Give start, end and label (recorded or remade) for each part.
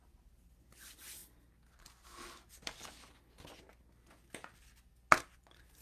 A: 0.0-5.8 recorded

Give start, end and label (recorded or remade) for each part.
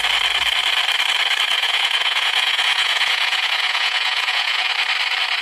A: 0.0-1.5 recorded; 1.5-4.7 remade; 4.7-5.4 recorded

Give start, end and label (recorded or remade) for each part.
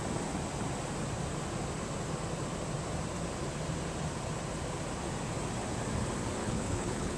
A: 0.0-6.4 recorded; 6.4-7.2 remade